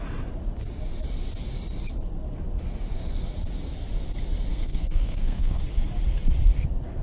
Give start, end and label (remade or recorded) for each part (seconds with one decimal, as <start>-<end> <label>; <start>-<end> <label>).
0.0-4.5 recorded; 4.5-5.6 remade; 5.6-7.0 recorded